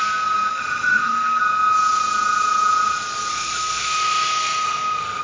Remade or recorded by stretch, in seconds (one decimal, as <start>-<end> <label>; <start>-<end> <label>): 0.0-0.5 recorded; 0.5-1.4 remade; 1.4-3.3 recorded; 3.3-5.2 remade